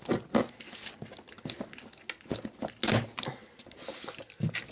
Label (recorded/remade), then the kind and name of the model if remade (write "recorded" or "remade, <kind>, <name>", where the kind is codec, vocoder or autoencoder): recorded